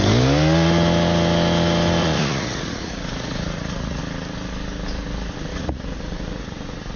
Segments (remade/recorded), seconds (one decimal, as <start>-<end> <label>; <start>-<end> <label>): 0.0-2.0 recorded; 2.0-4.0 remade; 4.0-5.5 recorded; 5.5-7.0 remade